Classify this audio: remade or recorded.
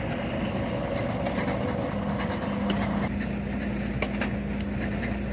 recorded